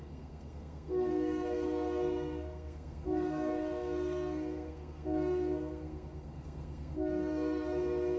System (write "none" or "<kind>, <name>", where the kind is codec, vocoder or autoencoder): codec, SNAC